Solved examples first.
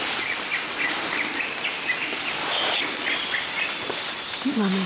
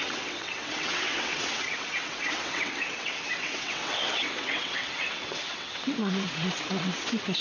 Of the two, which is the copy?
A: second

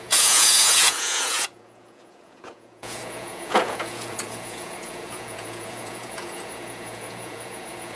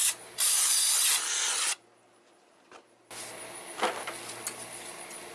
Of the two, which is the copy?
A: first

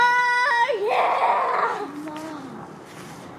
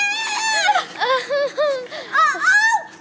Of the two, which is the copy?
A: first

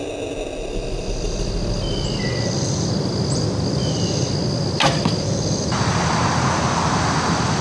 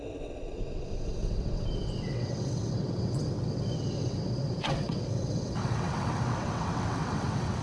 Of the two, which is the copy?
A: second